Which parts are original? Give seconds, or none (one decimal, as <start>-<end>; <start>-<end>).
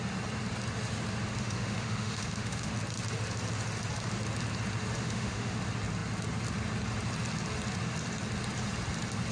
0.0-1.4; 2.7-5.0; 5.6-9.3